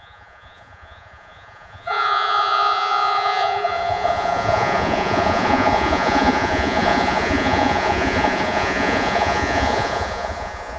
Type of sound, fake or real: fake